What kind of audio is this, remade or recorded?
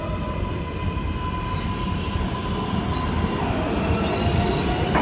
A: recorded